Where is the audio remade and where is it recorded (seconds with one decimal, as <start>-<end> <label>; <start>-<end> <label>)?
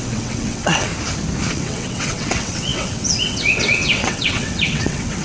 0.0-0.9 remade; 0.9-1.5 recorded; 1.5-5.2 remade